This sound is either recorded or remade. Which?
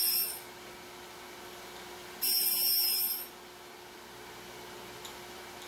recorded